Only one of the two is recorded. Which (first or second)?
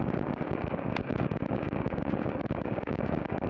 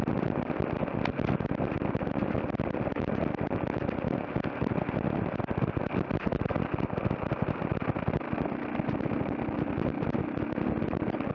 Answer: second